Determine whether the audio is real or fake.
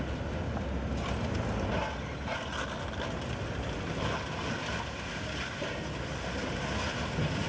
real